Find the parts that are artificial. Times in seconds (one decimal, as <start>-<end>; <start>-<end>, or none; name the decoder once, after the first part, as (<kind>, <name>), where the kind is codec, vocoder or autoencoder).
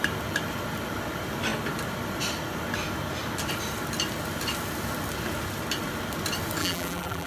6.6-7.3 (vocoder, BigVGAN v2)